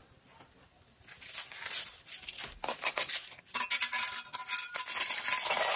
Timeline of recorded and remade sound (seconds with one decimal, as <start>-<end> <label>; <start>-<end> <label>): 0.0-5.8 recorded

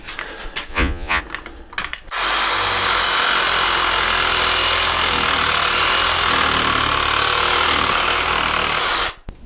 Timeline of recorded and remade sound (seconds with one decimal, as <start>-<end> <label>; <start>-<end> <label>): 0.0-0.7 recorded; 0.7-1.2 remade; 1.2-9.5 recorded

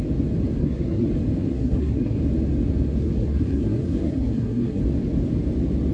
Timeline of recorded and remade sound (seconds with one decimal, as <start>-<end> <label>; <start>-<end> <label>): 0.0-0.6 recorded; 0.6-1.1 remade; 1.1-1.5 recorded; 1.5-2.2 remade; 2.2-3.0 recorded; 3.0-4.8 remade; 4.8-5.9 recorded

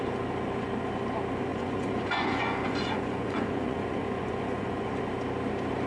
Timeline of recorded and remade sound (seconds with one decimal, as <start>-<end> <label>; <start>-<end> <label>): 0.0-1.5 recorded; 1.5-5.0 remade; 5.0-5.9 recorded

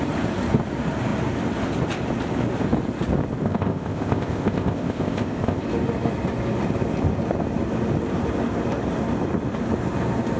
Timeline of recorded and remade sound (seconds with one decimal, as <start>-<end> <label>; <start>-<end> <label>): 0.0-3.4 recorded; 3.4-5.6 remade; 5.6-10.4 recorded

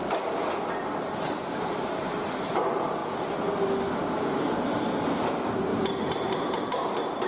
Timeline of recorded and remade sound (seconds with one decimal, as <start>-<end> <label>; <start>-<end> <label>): 0.0-1.5 recorded; 1.5-3.0 remade; 3.0-5.3 recorded; 5.3-7.3 remade

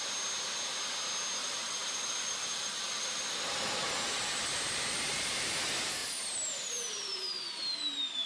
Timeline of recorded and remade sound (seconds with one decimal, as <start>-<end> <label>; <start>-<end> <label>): 0.0-1.4 recorded; 1.4-5.5 remade; 5.5-8.3 recorded

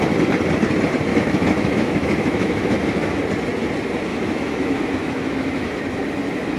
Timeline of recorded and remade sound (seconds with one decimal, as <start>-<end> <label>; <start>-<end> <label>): 0.0-1.1 recorded; 1.1-3.2 remade; 3.2-4.1 recorded; 4.1-5.8 remade; 5.8-6.6 recorded